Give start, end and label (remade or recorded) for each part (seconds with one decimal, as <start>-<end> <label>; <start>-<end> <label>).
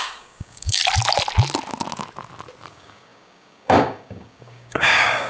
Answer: 0.0-0.8 remade; 0.8-2.7 recorded; 2.7-5.3 remade